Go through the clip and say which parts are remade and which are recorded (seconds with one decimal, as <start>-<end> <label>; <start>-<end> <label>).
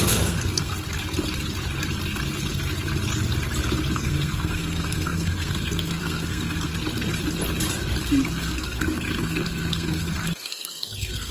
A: 0.0-0.7 remade; 0.7-3.9 recorded; 3.9-6.7 remade; 6.7-8.0 recorded; 8.0-11.3 remade